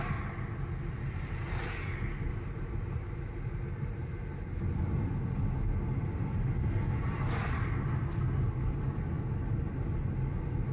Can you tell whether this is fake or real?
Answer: real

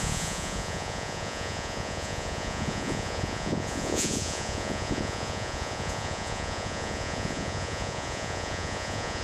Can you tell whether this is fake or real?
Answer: fake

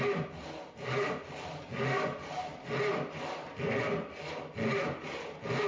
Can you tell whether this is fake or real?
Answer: real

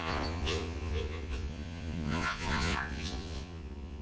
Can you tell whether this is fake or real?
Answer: fake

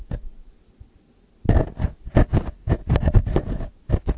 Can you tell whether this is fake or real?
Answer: real